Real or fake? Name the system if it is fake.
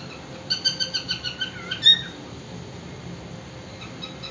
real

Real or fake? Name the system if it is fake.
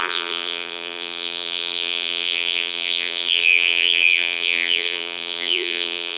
fake, vocoder, BigVGAN v2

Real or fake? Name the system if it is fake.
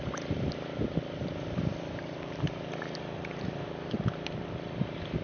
fake, vocoder, BigVGAN v2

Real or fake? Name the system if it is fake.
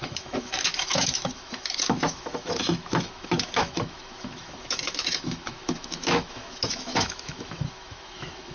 fake, autoencoder, DAC-VAE